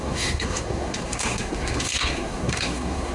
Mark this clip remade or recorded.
remade